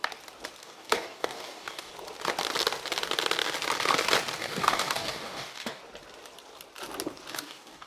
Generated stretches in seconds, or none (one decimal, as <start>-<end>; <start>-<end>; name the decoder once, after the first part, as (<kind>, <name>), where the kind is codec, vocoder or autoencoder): 0.6-1.9 (codec, DAC); 4.4-5.8; 7.3-7.9

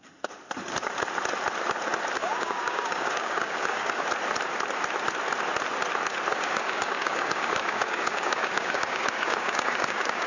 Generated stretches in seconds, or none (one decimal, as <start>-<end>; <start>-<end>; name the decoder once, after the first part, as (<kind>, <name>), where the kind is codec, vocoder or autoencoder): 2.2-4.0 (codec, DAC); 6.3-10.3

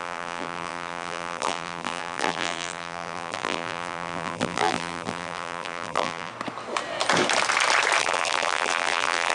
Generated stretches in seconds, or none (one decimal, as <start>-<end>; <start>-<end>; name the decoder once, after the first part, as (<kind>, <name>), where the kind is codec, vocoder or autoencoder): 0.0-6.3 (vocoder, BigVGAN v2); 8.0-9.3